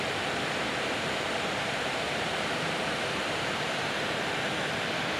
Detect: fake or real fake